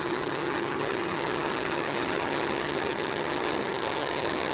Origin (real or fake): fake